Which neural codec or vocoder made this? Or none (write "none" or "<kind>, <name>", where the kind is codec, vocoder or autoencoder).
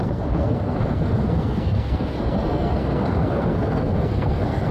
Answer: codec, SNAC